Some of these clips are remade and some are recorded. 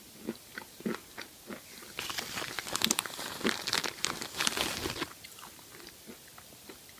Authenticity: recorded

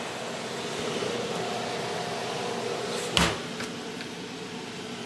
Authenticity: recorded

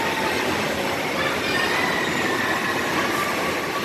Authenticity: recorded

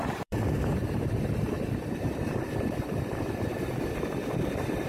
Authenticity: remade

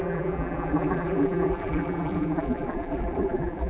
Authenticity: remade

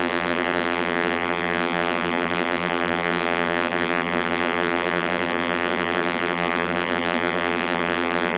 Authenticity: remade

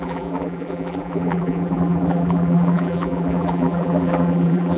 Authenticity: remade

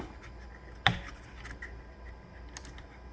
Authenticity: recorded